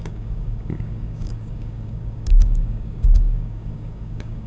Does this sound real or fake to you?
fake